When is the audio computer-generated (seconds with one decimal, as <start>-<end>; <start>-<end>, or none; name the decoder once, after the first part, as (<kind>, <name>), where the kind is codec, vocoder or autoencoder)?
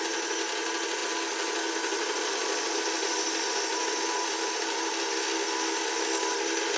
none